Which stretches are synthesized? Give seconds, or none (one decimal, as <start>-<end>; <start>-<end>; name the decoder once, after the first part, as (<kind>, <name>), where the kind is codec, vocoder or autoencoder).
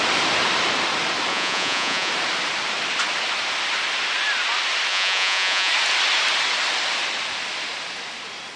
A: 1.3-2.1 (vocoder, Vocos); 4.9-5.7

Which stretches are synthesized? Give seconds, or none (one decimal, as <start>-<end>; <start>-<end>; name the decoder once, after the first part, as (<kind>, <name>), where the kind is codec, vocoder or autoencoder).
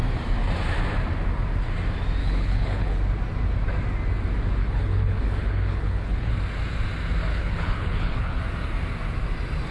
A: 2.2-3.0 (codec, HILCodec); 4.6-6.3; 7.3-8.4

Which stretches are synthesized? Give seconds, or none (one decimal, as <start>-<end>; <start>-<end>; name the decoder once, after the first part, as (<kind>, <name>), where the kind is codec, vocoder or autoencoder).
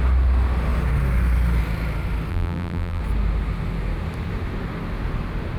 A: 2.3-3.0 (vocoder, BigVGAN v2)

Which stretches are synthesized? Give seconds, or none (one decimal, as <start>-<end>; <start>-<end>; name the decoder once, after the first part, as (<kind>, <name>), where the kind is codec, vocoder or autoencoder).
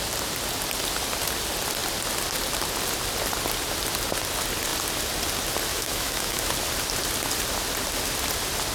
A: 5.7-6.5 (autoencoder, DAC-VAE)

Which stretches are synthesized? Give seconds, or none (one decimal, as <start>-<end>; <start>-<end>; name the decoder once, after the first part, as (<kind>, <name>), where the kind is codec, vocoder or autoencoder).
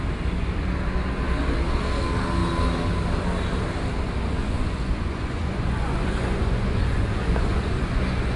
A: 4.4-8.4 (vocoder, Vocos)